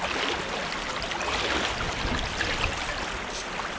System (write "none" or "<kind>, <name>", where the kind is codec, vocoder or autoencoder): none